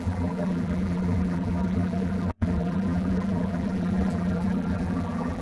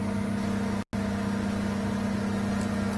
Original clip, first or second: second